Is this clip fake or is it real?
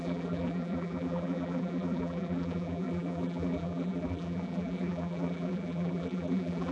fake